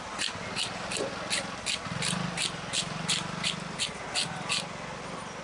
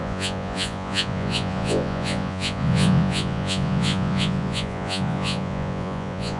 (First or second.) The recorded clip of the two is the first